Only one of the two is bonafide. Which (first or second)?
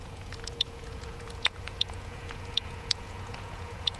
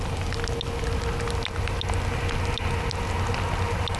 second